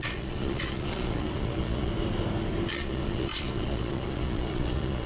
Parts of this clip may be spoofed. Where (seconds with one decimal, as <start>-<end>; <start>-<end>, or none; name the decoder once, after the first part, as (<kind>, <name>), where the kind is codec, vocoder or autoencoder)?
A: 0.0-1.9 (vocoder, Vocos); 2.7-5.1